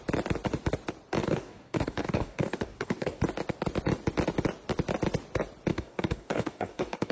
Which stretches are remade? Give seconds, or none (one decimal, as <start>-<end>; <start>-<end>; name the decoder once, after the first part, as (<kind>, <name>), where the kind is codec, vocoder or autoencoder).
1.2-3.2 (codec, DAC); 5.7-7.1